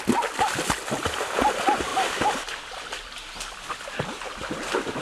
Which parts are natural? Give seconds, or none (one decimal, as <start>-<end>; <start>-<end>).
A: 0.0-5.0